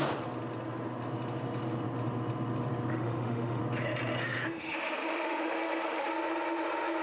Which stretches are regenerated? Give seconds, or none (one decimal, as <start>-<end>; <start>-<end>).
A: 2.9-3.6; 4.2-6.1